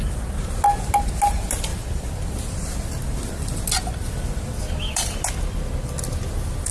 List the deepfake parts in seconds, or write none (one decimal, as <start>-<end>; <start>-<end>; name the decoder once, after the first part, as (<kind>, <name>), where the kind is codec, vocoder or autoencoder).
none